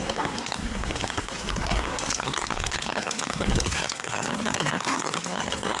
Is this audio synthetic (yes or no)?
yes